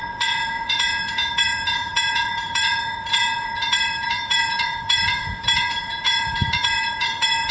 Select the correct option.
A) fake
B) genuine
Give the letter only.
A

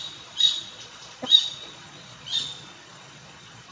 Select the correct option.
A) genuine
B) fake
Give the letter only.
B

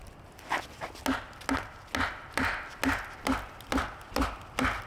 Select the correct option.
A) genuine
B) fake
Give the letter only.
A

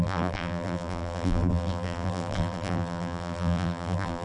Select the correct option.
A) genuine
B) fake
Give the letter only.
B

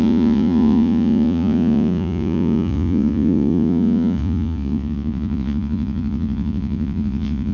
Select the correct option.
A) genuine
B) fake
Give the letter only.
B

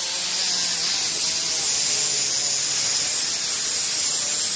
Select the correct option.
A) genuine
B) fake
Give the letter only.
A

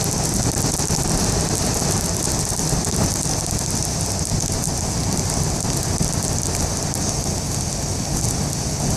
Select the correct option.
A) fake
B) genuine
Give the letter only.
B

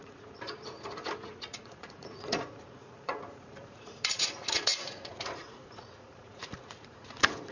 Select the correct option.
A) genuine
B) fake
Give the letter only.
B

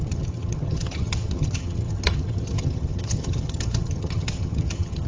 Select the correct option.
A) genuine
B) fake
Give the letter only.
B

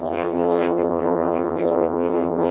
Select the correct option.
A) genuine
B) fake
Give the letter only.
B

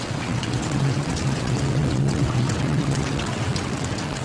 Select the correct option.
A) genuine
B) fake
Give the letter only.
B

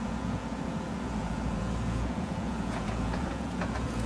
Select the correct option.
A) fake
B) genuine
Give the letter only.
A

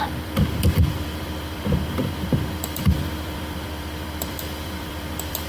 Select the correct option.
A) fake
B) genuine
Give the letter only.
A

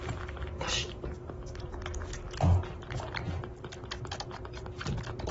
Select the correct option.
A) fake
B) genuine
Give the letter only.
B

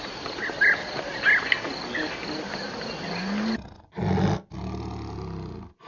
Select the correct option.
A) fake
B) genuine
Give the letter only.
B